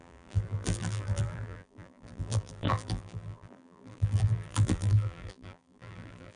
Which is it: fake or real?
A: fake